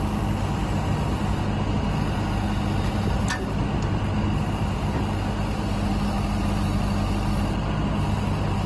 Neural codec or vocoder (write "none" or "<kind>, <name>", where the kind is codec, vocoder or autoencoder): none